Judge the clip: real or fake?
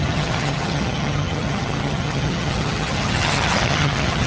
fake